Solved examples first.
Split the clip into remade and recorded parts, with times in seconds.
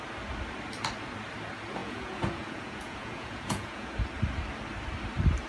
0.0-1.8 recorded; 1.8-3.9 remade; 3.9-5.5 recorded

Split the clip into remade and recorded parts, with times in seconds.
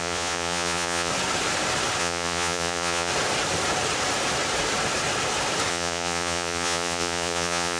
0.0-1.1 remade; 1.1-2.0 recorded; 2.0-3.1 remade; 3.1-5.7 recorded; 5.7-7.8 remade